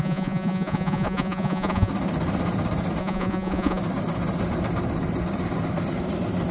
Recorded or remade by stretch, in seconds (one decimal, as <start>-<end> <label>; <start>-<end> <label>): 0.0-1.9 remade; 1.9-3.0 recorded; 3.0-3.8 remade; 3.8-6.5 recorded